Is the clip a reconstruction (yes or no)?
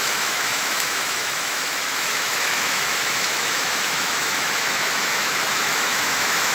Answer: yes